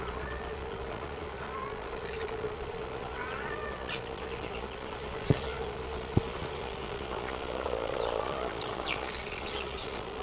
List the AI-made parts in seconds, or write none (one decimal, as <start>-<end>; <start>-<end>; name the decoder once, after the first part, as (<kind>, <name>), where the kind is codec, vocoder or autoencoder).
0.0-10.2 (vocoder, Vocos)